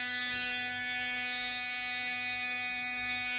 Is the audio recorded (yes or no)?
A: no